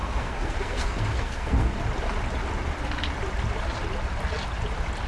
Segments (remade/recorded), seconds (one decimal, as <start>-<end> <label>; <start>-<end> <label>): 0.0-1.8 remade; 1.8-5.1 recorded